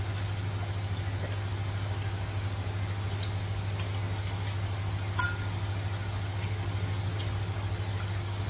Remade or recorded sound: recorded